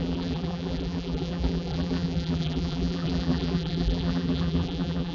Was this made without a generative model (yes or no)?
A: no